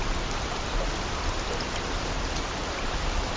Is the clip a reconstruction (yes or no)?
no